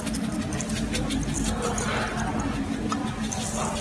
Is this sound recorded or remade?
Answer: recorded